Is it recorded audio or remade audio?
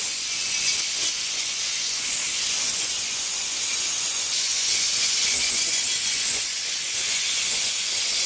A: remade